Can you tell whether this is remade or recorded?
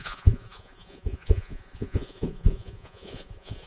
remade